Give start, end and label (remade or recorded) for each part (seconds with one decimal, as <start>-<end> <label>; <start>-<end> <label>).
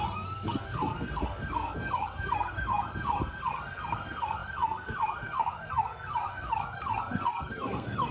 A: 0.0-8.1 remade